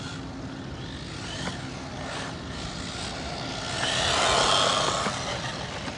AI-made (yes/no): no